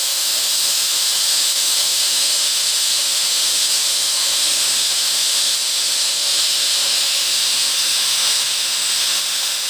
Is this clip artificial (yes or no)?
yes